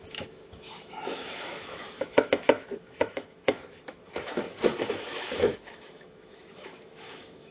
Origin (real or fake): fake